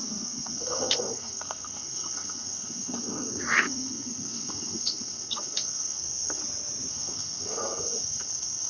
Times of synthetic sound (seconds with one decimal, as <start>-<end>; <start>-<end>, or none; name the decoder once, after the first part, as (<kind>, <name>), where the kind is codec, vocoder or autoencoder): 0.0-6.4 (codec, SNAC); 6.9-8.7